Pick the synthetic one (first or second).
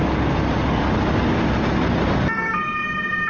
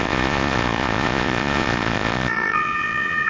second